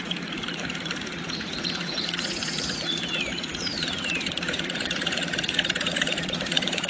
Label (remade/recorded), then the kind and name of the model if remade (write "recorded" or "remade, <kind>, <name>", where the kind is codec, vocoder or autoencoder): remade, vocoder, Vocos